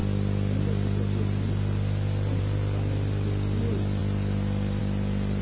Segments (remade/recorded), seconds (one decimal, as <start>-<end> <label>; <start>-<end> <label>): 0.0-5.4 recorded